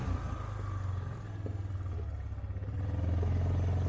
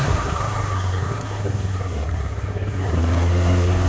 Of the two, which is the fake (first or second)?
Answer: second